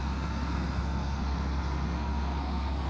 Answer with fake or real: fake